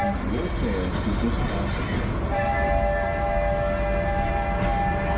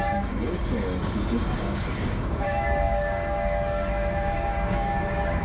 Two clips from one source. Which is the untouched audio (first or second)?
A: first